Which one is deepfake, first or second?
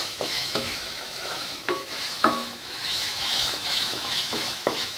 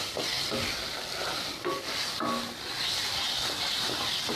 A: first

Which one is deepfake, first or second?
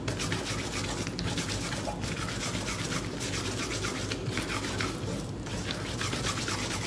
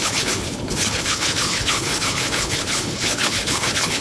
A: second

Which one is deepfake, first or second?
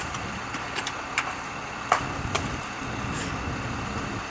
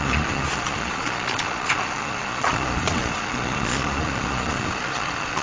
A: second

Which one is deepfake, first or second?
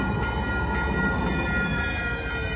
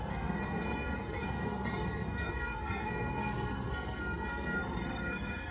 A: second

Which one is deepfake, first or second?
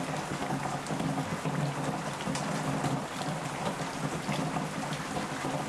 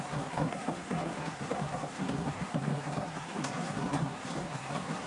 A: second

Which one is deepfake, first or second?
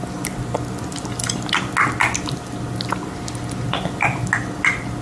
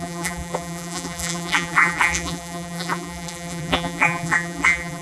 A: second